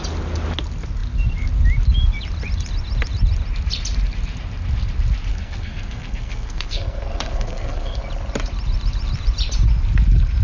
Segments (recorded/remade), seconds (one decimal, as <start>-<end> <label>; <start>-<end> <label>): 0.0-5.3 recorded; 5.3-8.0 remade; 8.0-10.4 recorded